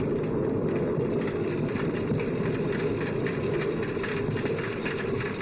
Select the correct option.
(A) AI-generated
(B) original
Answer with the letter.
B